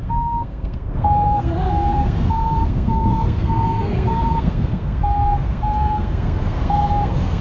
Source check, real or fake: fake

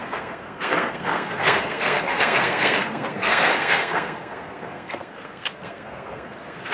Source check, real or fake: fake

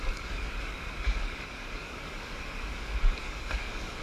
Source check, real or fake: fake